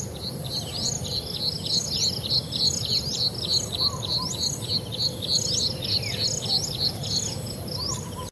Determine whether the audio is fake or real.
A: real